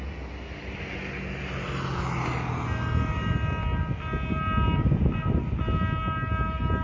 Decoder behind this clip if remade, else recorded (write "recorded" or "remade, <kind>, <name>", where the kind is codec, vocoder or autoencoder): recorded